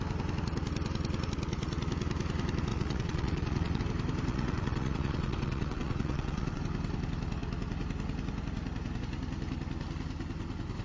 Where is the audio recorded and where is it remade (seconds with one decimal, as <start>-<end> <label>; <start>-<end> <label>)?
0.0-2.7 recorded; 2.7-3.8 remade; 3.8-4.3 recorded; 4.3-6.6 remade; 6.6-10.8 recorded